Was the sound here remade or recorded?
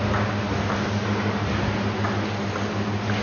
recorded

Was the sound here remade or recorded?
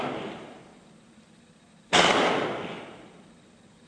recorded